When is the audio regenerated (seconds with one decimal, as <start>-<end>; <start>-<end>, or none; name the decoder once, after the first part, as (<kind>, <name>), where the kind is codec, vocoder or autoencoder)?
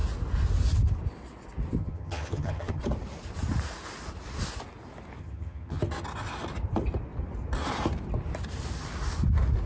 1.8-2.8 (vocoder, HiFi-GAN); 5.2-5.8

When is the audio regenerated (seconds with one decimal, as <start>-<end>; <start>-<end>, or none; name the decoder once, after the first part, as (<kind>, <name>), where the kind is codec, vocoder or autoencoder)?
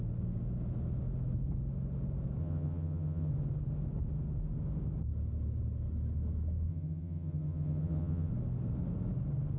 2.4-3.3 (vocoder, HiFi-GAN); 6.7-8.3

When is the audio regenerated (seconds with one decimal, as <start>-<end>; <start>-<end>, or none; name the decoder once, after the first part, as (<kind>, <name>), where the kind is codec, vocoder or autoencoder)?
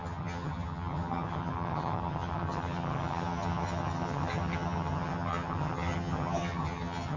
0.0-7.2 (vocoder, HiFi-GAN)